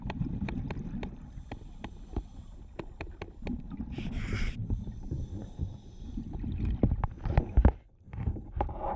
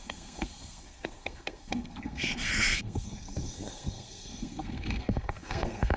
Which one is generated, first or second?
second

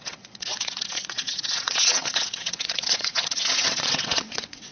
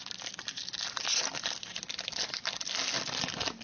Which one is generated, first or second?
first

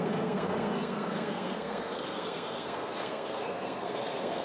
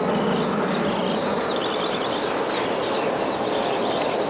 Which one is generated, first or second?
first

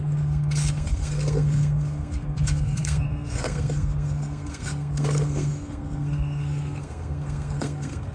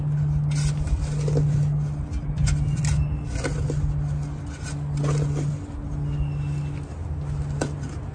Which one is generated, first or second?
first